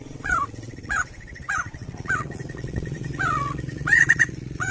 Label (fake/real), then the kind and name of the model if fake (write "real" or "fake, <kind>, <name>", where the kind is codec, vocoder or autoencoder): fake, vocoder, Vocos